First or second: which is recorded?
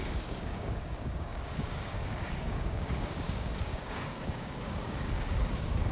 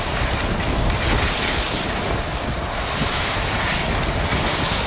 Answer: second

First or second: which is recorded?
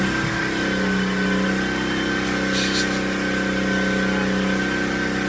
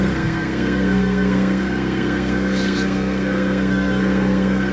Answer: first